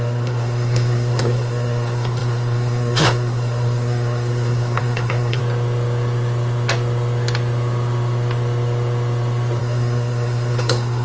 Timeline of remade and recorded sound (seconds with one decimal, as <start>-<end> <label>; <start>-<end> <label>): 0.0-5.4 remade; 5.4-9.6 recorded; 9.6-11.0 remade